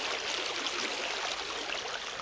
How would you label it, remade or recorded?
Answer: recorded